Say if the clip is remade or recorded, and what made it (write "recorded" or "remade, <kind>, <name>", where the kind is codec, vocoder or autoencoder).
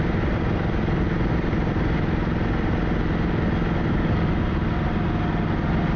recorded